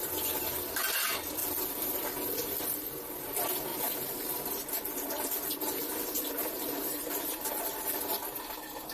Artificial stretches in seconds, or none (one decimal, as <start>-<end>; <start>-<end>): 3.7-7.5